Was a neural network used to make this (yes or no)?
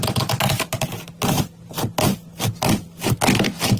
no